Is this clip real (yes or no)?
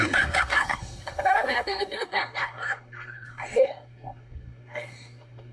no